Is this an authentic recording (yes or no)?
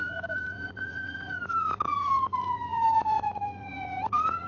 no